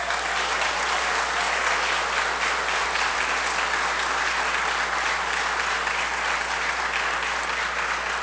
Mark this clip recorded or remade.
recorded